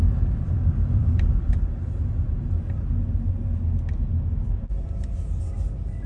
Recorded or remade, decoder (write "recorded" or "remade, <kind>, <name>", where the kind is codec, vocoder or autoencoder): recorded